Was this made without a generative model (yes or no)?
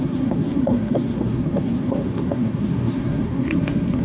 no